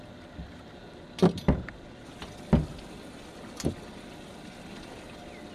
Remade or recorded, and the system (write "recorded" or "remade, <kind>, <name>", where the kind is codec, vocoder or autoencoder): recorded